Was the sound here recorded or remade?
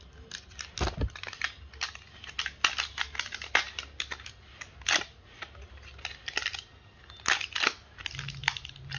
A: recorded